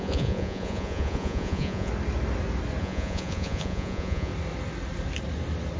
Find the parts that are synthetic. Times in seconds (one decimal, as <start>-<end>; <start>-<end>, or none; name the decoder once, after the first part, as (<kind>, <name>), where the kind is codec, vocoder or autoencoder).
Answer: 0.0-1.9 (vocoder, Vocos); 2.8-4.3